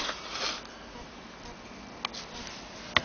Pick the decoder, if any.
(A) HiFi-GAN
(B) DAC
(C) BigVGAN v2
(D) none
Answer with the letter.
D